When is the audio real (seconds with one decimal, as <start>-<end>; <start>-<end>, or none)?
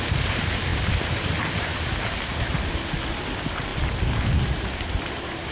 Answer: 0.0-5.5